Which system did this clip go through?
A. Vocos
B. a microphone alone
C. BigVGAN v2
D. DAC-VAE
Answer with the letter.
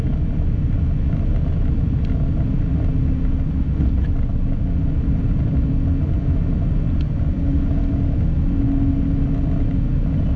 B